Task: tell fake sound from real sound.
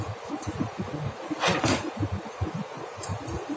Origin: fake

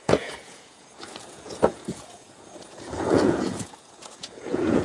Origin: fake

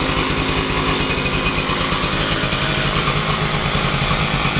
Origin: real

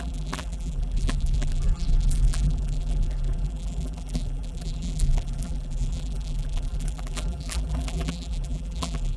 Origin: fake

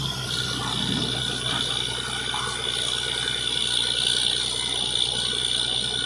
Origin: real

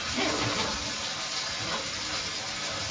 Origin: real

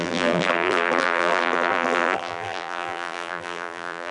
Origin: fake